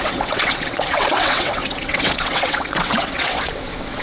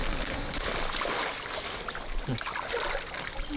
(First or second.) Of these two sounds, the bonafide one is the second